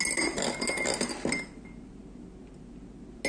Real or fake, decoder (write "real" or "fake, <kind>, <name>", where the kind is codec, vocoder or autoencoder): real